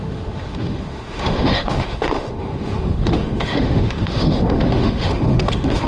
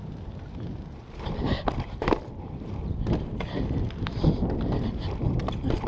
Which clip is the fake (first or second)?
first